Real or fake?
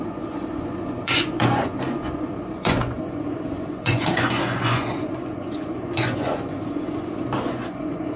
fake